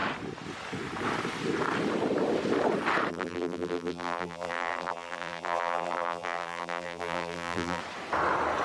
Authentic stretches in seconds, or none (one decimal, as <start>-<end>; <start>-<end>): 0.0-3.1; 7.8-8.6